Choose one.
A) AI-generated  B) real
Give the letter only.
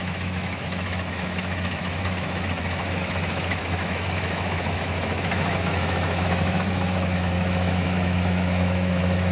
A